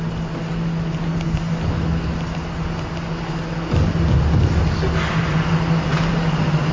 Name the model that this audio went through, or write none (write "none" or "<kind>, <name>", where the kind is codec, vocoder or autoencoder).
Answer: none